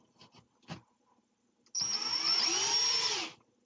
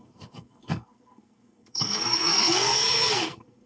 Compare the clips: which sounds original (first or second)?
first